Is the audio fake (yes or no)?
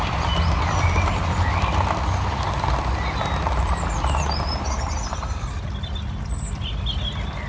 no